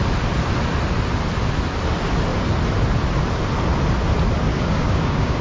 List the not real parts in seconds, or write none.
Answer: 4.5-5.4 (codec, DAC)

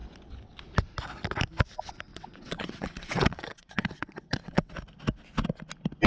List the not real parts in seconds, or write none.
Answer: 2.1-4.7 (vocoder, WaveNeXt)

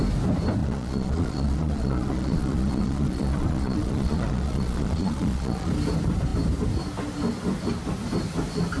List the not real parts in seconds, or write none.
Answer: 0.6-5.7 (vocoder, Vocos)

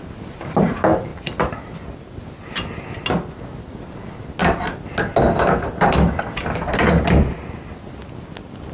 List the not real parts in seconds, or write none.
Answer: none

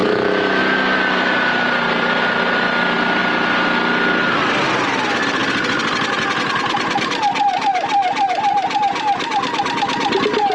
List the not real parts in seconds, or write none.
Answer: 0.0-0.6 (autoencoder, DAC-VAE)